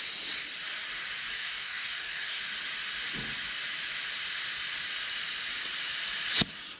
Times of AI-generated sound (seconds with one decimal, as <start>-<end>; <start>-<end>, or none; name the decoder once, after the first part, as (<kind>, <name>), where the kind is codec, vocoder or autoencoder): 1.3-2.4 (codec, DAC)

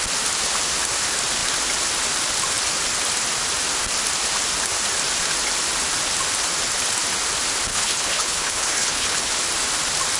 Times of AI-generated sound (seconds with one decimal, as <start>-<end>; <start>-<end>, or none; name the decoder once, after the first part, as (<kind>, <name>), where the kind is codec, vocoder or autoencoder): 7.7-9.3 (codec, HILCodec)

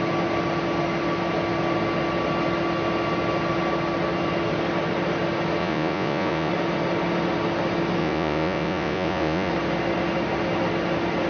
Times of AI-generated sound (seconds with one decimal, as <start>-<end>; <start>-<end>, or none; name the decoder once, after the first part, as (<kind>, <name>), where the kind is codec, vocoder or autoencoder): 5.6-6.5 (vocoder, Vocos); 8.0-9.5